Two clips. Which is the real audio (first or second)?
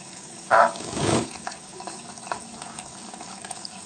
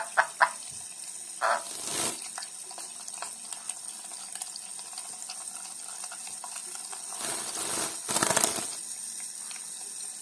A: second